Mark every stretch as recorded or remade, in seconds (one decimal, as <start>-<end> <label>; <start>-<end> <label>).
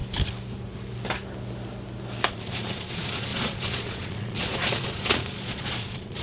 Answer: 0.0-2.3 recorded; 2.3-6.2 remade